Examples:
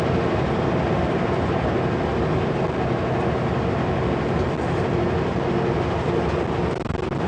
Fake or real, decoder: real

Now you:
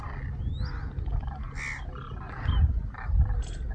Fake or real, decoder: real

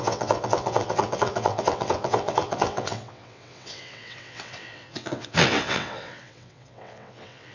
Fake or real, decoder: fake, vocoder, WaveNeXt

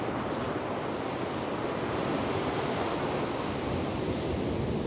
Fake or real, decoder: real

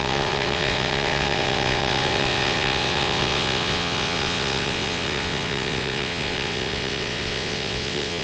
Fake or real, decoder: fake, vocoder, WaveNeXt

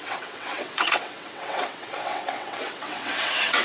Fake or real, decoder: fake, vocoder, WaveNeXt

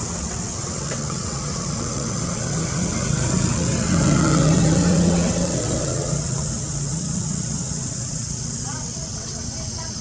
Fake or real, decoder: fake, vocoder, WaveNeXt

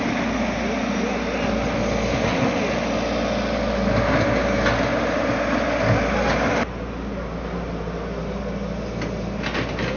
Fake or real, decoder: real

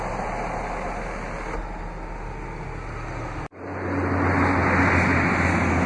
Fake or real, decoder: real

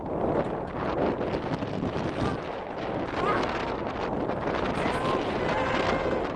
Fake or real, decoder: real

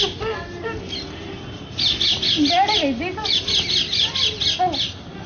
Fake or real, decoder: real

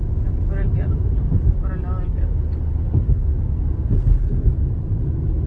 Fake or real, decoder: real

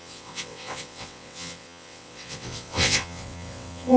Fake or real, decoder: fake, vocoder, WaveNeXt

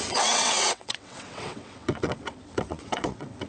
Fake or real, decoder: fake, vocoder, WaveNeXt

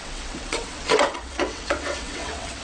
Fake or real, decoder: fake, vocoder, WaveNeXt